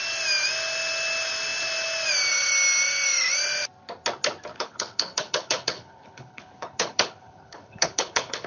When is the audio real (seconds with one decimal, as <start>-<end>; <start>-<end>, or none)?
0.0-4.5